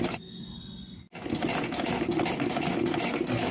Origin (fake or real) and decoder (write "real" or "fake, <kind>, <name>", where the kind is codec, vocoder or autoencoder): real